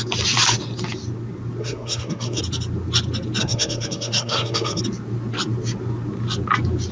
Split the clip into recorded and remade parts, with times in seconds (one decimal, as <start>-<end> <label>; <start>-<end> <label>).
0.0-1.6 recorded; 1.6-2.4 remade; 2.4-3.4 recorded; 3.4-4.8 remade; 4.8-6.9 recorded

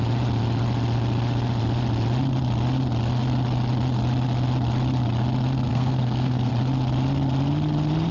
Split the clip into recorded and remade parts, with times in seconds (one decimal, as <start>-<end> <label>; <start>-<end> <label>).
0.0-5.7 recorded; 5.7-6.5 remade; 6.5-8.1 recorded

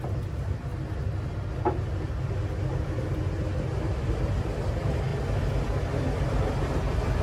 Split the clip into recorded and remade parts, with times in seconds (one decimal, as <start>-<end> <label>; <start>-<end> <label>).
0.0-7.2 recorded